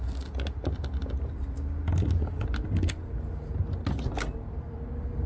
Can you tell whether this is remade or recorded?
recorded